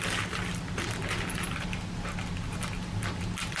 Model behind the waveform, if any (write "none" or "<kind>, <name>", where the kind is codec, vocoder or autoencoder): none